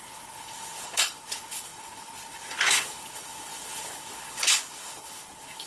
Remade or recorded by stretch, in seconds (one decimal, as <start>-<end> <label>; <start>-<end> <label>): 0.0-5.7 remade